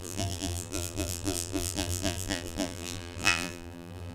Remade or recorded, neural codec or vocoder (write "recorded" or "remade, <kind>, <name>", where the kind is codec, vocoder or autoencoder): remade, vocoder, BigVGAN v2